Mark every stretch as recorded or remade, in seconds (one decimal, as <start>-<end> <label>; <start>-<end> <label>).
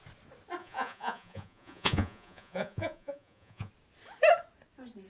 0.0-0.6 recorded; 0.6-3.7 remade; 3.7-5.1 recorded